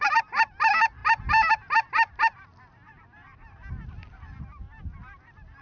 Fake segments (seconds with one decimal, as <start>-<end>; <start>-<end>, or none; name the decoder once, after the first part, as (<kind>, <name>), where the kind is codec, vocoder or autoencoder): none

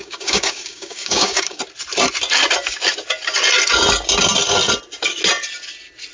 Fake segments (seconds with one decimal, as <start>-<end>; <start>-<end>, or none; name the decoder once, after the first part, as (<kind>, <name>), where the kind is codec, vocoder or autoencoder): 0.0-1.6 (codec, DAC)

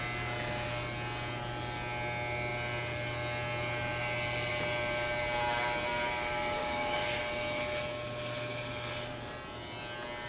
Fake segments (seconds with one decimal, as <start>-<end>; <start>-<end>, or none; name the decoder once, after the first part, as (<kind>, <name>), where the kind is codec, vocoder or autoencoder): 6.6-7.2 (codec, DAC)

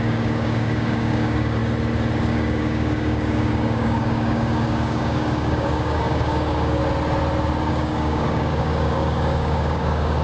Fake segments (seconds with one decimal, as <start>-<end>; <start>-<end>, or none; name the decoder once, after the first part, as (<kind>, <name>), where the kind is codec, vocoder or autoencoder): 0.0-1.6 (codec, DAC); 2.2-6.8; 7.7-10.2

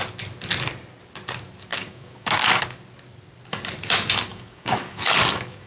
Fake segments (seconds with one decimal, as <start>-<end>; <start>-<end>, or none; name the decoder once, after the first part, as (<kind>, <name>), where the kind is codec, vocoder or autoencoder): 1.7-2.6 (codec, DAC); 4.3-5.7

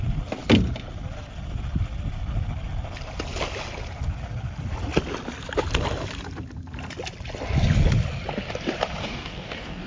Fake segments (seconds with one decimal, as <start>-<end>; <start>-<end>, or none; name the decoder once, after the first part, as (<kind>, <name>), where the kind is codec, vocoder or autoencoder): 9.0-9.9 (codec, DAC)